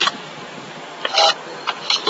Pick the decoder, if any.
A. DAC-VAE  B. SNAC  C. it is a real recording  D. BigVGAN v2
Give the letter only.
C